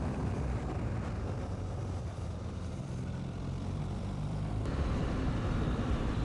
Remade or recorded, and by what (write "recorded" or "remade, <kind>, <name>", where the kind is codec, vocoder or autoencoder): remade, vocoder, BigVGAN v2